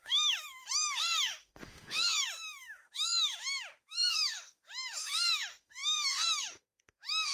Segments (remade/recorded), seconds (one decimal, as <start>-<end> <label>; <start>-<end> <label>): 0.0-7.3 remade